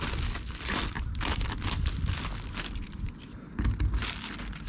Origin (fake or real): real